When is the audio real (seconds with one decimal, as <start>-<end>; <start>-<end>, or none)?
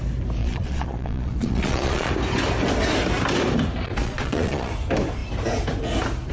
0.0-0.4; 2.1-4.0; 4.7-6.3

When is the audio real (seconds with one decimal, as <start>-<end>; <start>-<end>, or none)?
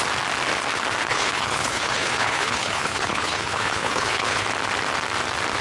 0.0-1.0; 4.4-5.6